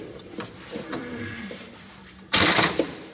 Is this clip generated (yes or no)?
yes